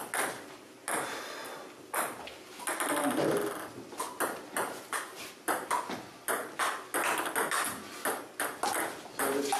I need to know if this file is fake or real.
real